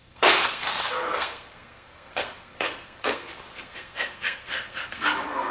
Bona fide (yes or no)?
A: no